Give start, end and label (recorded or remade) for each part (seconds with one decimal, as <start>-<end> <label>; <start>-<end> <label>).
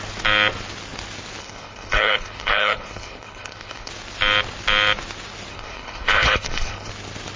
0.0-1.4 recorded; 1.4-3.9 remade; 3.9-5.5 recorded; 5.5-6.9 remade; 6.9-7.4 recorded